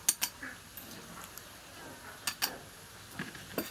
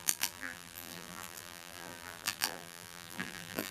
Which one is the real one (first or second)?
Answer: first